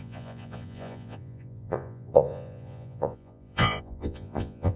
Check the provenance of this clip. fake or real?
fake